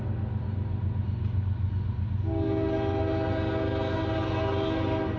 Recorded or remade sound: recorded